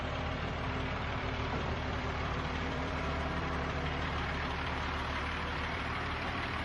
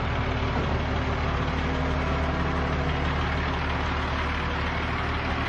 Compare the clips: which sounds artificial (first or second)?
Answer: first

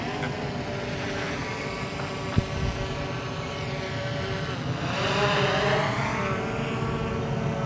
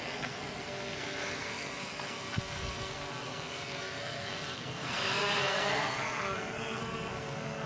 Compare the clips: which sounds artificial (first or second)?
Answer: second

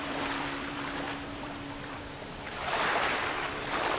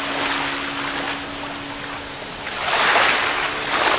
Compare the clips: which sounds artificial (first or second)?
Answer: first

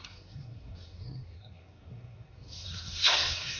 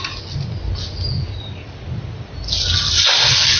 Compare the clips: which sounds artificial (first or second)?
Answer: first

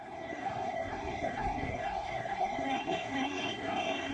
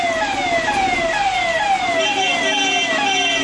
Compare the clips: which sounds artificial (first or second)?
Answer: first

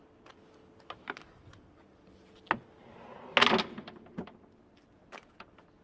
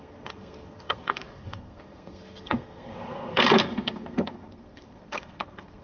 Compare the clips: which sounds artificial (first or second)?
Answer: second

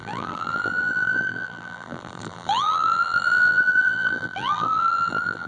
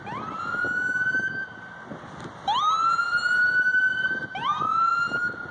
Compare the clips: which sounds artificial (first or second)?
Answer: first